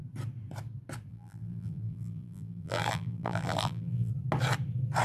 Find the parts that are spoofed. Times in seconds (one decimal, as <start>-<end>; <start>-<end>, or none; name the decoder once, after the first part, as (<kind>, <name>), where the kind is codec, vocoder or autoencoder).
1.1-4.1 (vocoder, BigVGAN v2)